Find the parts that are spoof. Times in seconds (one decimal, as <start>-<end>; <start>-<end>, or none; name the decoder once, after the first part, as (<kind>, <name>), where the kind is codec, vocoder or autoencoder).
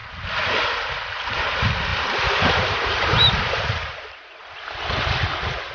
1.3-5.7 (vocoder, BigVGAN v2)